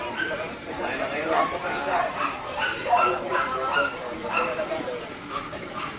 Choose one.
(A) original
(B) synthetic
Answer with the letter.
B